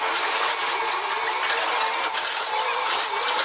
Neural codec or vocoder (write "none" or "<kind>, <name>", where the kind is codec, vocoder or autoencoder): none